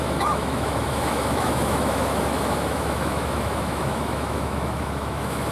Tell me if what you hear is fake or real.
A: fake